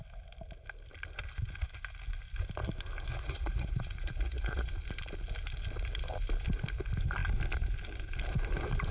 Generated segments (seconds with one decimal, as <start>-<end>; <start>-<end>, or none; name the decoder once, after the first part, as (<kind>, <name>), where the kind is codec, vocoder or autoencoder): 3.1-4.7 (vocoder, Vocos)